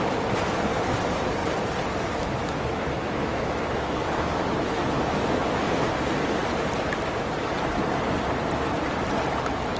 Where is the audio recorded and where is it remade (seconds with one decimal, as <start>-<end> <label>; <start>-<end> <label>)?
0.0-2.4 recorded; 2.4-5.9 remade; 5.9-9.8 recorded